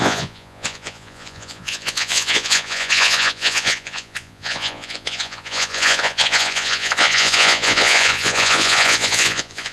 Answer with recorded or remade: remade